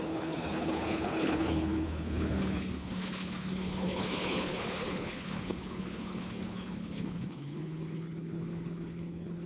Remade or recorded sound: remade